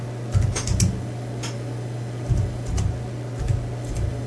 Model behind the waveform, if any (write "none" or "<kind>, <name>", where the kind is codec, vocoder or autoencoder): none